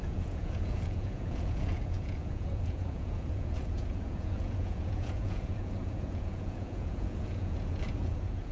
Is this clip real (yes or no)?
no